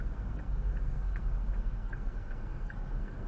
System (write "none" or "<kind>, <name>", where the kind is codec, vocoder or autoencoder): codec, SNAC